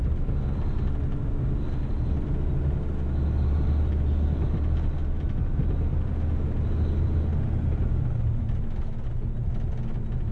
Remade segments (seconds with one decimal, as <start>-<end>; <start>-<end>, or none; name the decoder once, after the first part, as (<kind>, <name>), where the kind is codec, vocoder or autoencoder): none